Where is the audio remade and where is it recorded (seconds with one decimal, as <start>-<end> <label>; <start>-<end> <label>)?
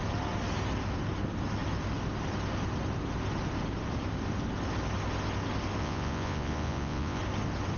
0.0-5.8 recorded; 5.8-7.2 remade; 7.2-7.8 recorded